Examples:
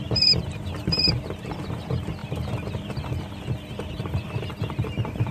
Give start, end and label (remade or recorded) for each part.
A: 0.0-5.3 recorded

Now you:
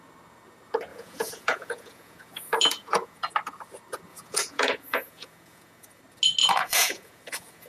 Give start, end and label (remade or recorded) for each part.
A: 0.0-0.9 recorded; 0.9-3.3 remade; 3.3-4.1 recorded; 4.1-6.0 remade; 6.0-6.4 recorded; 6.4-7.7 remade